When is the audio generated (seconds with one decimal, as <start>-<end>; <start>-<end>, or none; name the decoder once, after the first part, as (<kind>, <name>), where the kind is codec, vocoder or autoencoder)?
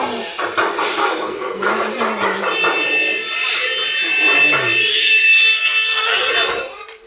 1.0-1.7 (codec, SNAC); 4.9-6.3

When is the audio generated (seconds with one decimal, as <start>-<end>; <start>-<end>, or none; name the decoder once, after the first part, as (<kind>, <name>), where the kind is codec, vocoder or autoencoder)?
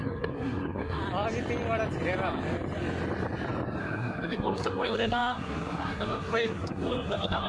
0.0-1.0 (codec, SNAC); 3.8-7.5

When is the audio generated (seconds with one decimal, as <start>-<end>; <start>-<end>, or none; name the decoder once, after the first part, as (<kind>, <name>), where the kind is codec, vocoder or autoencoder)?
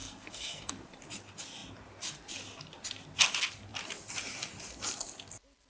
0.0-0.7 (codec, SNAC)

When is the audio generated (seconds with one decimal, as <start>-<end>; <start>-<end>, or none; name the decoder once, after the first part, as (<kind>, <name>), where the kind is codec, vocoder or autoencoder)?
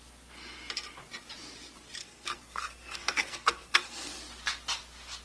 2.0-4.2 (codec, SNAC)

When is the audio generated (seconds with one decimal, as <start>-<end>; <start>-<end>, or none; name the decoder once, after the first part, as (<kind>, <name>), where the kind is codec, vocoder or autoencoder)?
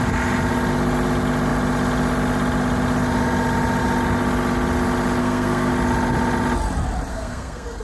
5.2-5.7 (codec, SNAC); 7.1-7.8